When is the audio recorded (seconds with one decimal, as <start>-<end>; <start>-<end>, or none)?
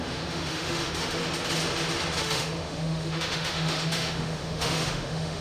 1.2-2.2